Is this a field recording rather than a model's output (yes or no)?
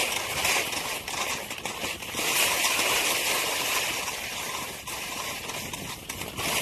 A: yes